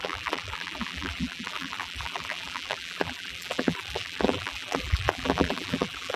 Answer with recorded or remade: remade